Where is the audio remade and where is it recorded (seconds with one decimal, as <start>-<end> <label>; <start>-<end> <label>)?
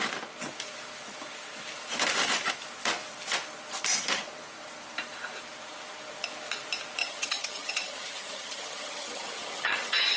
0.0-7.0 recorded; 7.0-10.2 remade